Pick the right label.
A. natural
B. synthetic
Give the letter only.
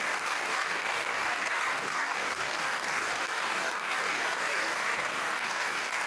B